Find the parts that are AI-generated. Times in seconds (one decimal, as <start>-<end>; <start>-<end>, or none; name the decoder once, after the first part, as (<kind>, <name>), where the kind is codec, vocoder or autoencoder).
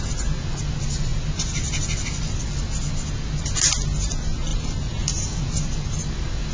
4.5-5.6 (vocoder, BigVGAN v2)